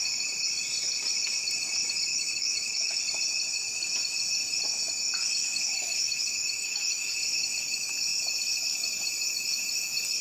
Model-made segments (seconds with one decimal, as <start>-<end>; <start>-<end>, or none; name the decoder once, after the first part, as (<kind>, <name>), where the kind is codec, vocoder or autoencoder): 2.1-3.0 (autoencoder, DAC-VAE); 5.4-7.1